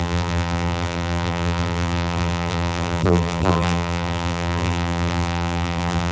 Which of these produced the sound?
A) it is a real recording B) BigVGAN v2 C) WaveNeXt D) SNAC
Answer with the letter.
B